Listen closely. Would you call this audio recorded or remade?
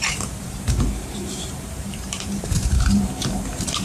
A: remade